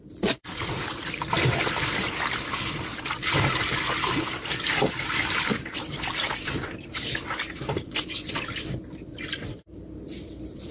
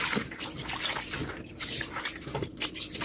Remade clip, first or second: first